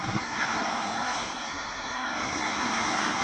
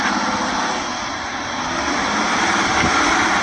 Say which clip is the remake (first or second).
first